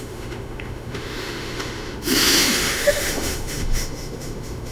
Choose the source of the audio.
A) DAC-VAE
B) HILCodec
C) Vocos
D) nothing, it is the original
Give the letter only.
A